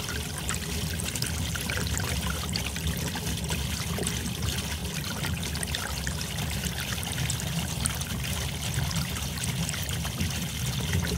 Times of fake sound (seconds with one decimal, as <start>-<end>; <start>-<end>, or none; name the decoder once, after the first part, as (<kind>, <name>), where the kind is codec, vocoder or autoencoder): none